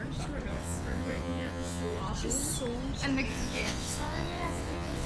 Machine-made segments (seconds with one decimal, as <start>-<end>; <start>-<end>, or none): 0.5-2.0; 3.3-5.1